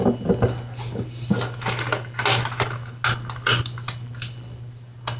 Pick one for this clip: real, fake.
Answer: real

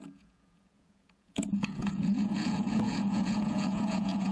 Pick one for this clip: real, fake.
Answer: fake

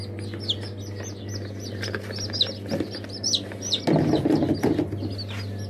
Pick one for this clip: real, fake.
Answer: real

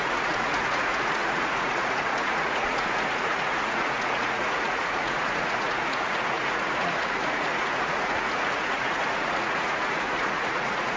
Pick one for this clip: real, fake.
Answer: fake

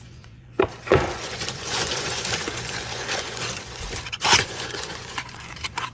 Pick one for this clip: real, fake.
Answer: fake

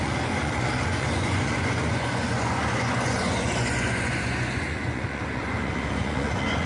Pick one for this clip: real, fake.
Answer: fake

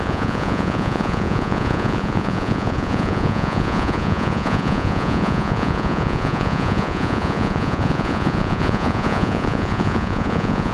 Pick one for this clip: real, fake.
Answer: fake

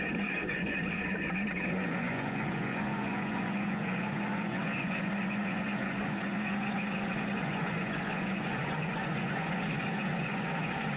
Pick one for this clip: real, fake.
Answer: fake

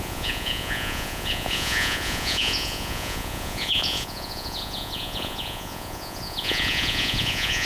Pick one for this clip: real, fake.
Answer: fake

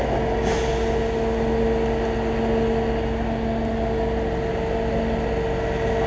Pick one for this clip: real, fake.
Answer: real